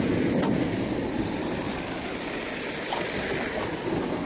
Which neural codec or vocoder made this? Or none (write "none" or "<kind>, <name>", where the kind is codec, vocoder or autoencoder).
vocoder, BigVGAN v2